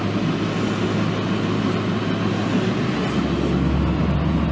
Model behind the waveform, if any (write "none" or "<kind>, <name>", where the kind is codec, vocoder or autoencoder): none